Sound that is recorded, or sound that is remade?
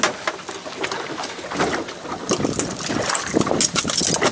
recorded